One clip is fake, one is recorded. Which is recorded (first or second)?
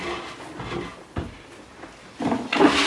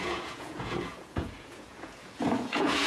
first